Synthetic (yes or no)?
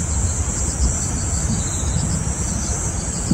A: no